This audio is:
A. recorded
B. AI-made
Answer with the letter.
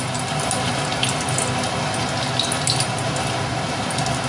A